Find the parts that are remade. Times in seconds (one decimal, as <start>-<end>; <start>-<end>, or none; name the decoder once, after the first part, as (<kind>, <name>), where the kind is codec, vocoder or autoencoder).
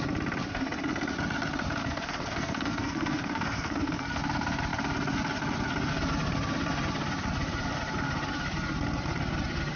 1.8-4.2 (codec, SNAC)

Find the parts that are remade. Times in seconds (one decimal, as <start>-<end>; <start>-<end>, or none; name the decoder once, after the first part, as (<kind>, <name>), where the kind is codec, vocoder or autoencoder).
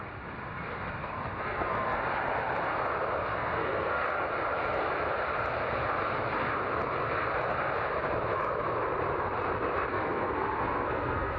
1.0-2.0 (codec, SNAC); 3.3-4.0; 9.9-11.4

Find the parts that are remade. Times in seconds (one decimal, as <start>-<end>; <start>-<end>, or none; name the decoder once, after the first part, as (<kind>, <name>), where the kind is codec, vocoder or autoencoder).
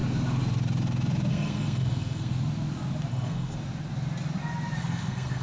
1.3-2.3 (codec, SNAC); 3.1-3.6; 4.8-5.4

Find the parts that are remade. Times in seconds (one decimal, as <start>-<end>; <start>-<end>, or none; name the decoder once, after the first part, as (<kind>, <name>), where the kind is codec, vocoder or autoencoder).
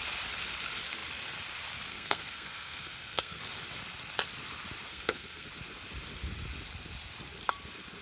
1.9-3.4 (codec, SNAC); 4.9-5.5